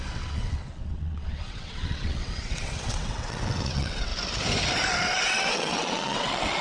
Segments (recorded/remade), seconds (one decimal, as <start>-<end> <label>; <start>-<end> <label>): 0.0-4.1 remade; 4.1-5.2 recorded; 5.2-6.6 remade